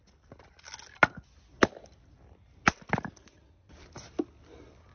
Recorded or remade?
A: recorded